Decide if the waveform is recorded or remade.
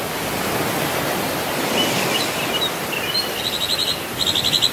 recorded